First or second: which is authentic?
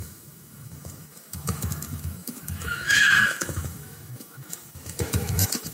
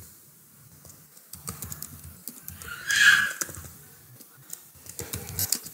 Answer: second